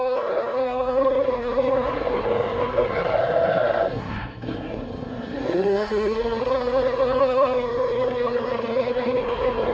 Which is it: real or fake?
fake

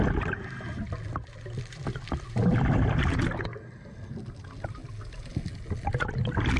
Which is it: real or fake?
real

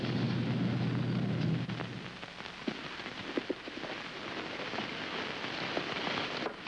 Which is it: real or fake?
real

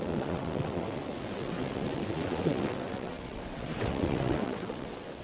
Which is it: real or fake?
fake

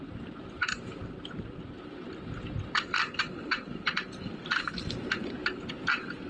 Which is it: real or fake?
fake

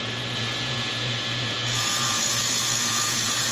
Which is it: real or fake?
fake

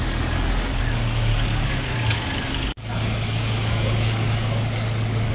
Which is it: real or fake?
fake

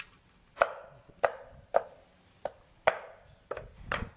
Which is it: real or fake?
real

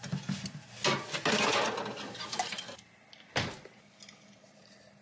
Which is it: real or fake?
real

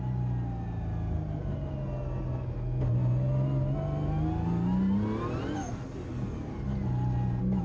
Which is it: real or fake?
real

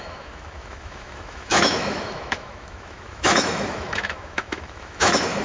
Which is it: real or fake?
fake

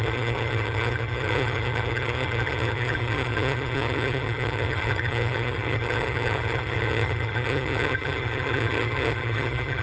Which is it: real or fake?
fake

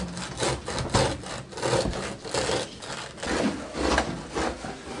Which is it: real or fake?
real